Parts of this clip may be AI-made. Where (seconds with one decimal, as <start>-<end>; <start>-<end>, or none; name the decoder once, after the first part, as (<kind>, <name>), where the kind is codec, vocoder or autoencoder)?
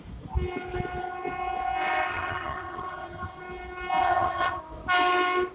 2.1-3.4 (vocoder, HiFi-GAN); 4.0-4.6